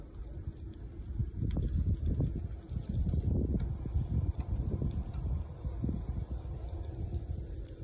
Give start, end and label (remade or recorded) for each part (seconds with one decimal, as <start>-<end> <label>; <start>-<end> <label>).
0.0-7.8 recorded